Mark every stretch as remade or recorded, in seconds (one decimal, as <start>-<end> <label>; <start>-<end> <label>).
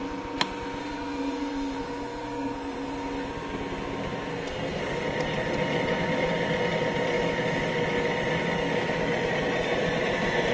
0.0-0.8 recorded; 0.8-3.3 remade; 3.3-4.3 recorded; 4.3-4.8 remade; 4.8-10.5 recorded